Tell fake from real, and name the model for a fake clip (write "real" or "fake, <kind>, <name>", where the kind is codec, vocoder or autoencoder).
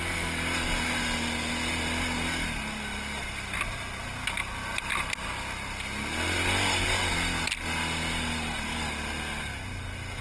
real